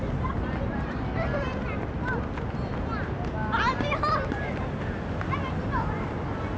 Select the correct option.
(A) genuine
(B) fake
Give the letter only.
A